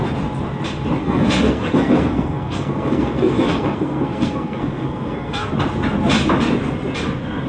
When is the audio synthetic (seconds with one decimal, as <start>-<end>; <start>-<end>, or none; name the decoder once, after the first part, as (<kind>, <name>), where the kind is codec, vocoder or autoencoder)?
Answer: 1.0-5.5 (codec, SNAC)